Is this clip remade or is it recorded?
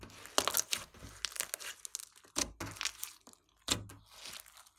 recorded